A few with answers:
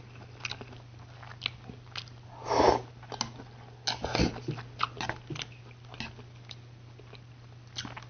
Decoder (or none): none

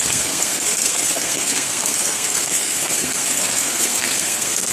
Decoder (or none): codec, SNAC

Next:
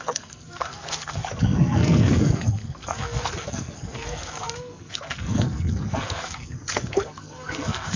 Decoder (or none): codec, SNAC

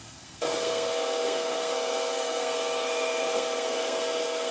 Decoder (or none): codec, SNAC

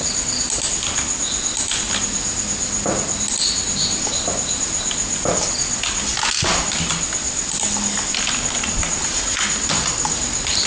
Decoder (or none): none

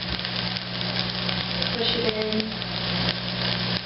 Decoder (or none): none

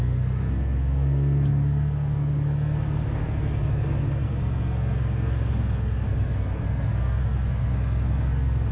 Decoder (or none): codec, SNAC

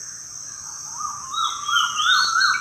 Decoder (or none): none